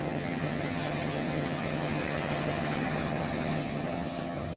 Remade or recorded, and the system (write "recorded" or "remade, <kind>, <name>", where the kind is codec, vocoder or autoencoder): remade, vocoder, HiFi-GAN